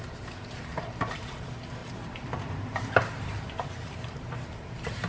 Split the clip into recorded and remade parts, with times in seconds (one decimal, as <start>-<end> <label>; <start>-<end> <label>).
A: 0.0-0.7 recorded; 0.7-1.4 remade; 1.4-1.8 recorded; 1.8-5.1 remade